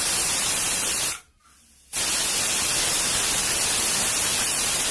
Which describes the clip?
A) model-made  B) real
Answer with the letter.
B